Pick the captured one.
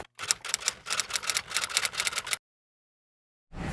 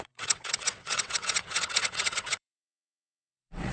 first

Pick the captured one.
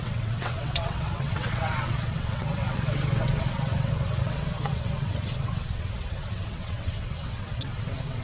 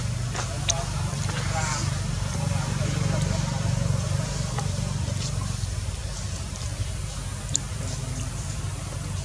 second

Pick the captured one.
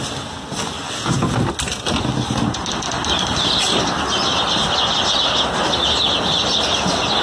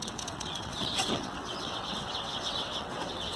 first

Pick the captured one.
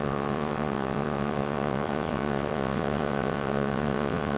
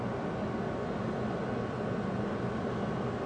second